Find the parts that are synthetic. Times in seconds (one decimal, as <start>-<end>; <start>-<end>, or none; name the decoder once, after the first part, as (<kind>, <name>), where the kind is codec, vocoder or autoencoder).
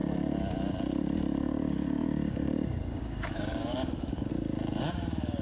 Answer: 1.4-4.3 (codec, DAC); 4.8-5.4